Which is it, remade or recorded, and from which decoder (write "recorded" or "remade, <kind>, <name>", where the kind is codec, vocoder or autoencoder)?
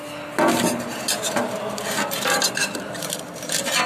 recorded